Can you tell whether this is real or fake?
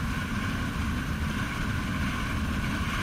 real